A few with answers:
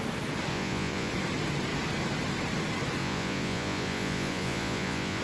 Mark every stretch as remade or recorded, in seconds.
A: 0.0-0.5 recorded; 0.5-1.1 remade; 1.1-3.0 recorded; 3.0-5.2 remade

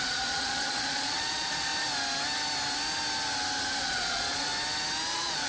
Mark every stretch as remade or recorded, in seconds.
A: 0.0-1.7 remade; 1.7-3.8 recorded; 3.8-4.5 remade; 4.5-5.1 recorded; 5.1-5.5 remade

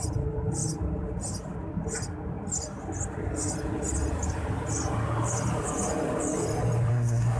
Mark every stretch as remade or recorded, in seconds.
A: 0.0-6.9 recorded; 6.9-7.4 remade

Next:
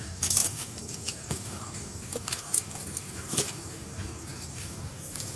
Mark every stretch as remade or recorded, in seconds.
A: 0.0-5.4 remade

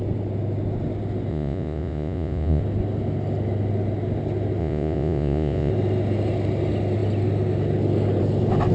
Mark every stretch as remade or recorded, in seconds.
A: 0.0-1.3 recorded; 1.3-2.6 remade; 2.6-4.6 recorded; 4.6-5.7 remade; 5.7-8.7 recorded

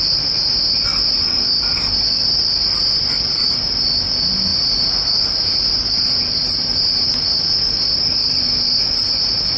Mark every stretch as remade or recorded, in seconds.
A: 0.0-9.6 recorded